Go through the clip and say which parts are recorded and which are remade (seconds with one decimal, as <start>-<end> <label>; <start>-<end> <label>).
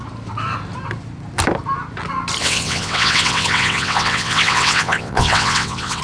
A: 0.0-2.4 recorded; 2.4-6.0 remade